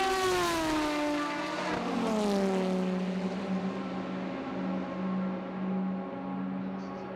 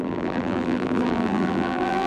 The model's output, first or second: second